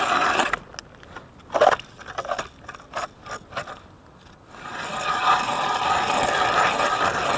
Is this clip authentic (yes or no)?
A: yes